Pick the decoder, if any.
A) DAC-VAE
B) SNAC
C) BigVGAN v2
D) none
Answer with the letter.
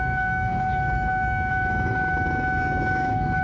A